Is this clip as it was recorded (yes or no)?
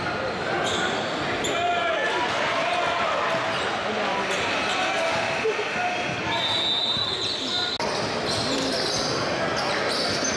yes